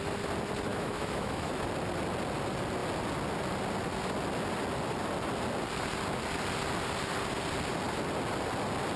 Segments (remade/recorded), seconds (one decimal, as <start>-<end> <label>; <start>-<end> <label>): 0.0-0.7 recorded; 0.7-1.5 remade; 1.5-9.0 recorded

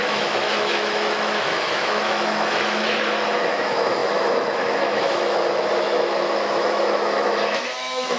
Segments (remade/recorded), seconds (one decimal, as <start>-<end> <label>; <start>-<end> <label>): 0.0-8.2 remade

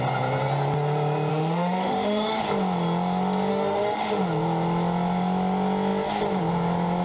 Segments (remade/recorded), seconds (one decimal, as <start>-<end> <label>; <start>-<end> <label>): 0.0-1.3 recorded; 1.3-2.4 remade; 2.4-3.5 recorded; 3.5-4.2 remade; 4.2-7.0 recorded

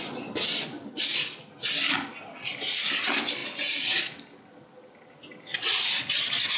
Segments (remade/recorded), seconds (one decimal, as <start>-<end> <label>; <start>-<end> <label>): 0.0-6.6 recorded

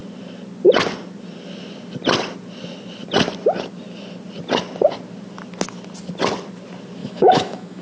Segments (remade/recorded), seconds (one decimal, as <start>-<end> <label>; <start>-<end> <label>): 0.0-7.0 recorded; 7.0-7.8 remade